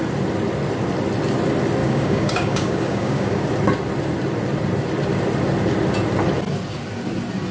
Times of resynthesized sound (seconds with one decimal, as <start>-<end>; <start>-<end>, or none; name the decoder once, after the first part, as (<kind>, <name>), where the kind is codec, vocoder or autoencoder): 1.8-3.4 (codec, DAC)